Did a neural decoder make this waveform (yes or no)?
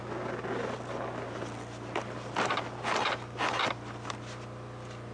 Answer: no